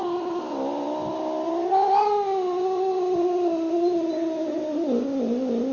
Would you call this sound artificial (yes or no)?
no